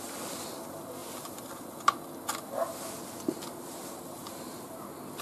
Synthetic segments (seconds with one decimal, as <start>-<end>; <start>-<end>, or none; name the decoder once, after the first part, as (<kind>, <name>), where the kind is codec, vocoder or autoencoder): none